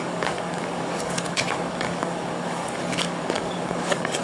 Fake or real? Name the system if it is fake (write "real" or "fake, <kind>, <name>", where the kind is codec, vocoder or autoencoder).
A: fake, codec, DAC